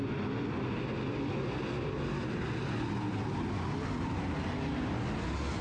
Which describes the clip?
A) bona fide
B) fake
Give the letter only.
A